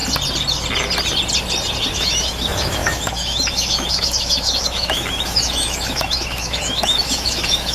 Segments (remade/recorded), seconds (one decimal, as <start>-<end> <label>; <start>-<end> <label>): 0.0-1.9 recorded; 1.9-7.7 remade